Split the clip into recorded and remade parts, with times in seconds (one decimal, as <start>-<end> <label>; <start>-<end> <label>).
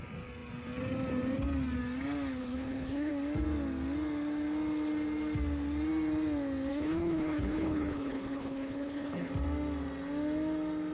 0.0-2.4 recorded; 2.4-3.1 remade; 3.1-6.7 recorded; 6.7-9.3 remade; 9.3-10.9 recorded